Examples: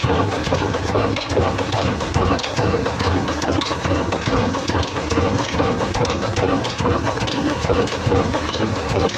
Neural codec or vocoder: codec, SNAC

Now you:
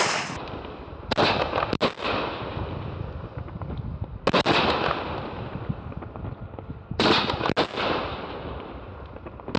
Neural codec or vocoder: none